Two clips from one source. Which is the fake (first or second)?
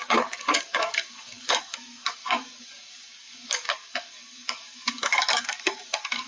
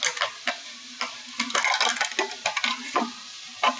first